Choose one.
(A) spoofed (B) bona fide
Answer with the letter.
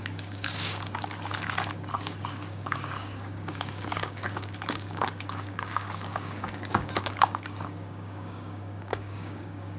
A